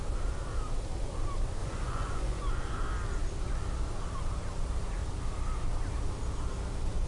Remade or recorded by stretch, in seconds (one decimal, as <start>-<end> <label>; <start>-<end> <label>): 0.0-1.6 recorded; 1.6-2.4 remade; 2.4-7.1 recorded